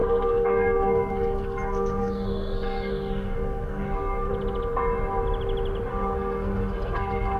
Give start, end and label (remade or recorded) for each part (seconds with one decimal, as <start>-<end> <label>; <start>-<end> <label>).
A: 0.0-4.3 remade; 4.3-5.9 recorded; 5.9-7.4 remade